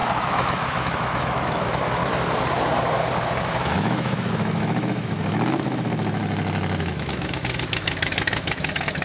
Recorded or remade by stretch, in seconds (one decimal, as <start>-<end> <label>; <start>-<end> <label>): 0.0-2.0 remade; 2.0-3.4 recorded; 3.4-6.2 remade; 6.2-6.8 recorded; 6.8-9.0 remade